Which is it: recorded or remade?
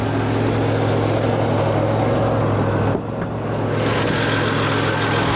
recorded